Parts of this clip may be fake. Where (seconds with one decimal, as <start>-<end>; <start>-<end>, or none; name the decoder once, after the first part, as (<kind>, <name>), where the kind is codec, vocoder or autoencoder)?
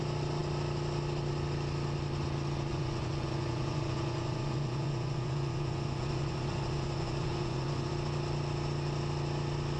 2.7-7.9 (vocoder, Vocos)